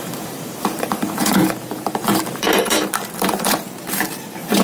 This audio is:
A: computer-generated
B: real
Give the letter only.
A